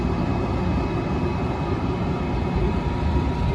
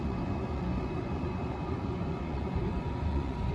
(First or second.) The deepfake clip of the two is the second